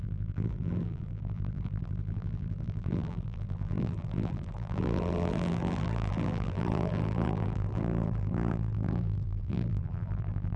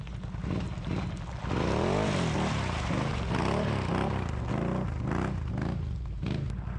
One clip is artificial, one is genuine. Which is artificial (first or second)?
first